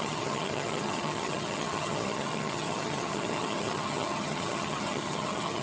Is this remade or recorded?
remade